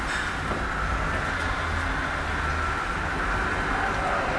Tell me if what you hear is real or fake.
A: real